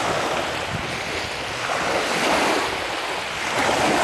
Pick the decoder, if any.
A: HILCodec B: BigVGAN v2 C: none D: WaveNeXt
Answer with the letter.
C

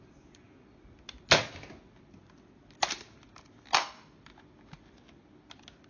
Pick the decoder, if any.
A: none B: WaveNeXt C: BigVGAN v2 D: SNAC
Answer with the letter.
A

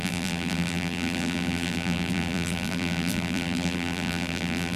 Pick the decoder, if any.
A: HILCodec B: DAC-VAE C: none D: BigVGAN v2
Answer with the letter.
D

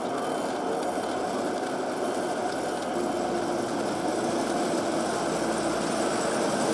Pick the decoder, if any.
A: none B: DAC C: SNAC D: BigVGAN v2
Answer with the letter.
A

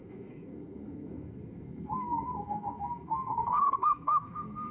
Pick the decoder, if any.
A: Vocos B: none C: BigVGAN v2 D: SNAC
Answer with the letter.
D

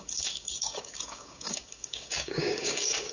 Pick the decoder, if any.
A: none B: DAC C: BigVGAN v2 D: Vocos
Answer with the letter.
B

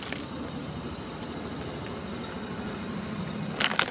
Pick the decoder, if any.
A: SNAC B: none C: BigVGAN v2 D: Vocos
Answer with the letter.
B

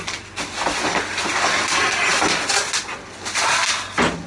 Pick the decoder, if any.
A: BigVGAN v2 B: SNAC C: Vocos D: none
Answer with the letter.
D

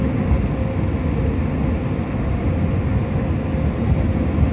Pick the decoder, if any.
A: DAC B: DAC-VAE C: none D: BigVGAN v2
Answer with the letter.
C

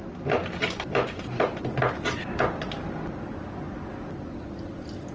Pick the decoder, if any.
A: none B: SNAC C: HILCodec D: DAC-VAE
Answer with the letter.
A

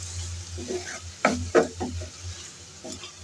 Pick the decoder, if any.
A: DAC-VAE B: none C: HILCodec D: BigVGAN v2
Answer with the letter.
B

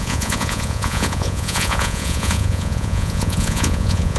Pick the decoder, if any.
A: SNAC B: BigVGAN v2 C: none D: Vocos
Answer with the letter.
D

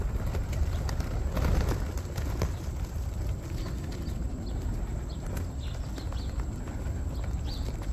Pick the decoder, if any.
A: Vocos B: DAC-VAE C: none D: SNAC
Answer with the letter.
C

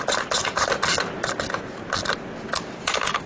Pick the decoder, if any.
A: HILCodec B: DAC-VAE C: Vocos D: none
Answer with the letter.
D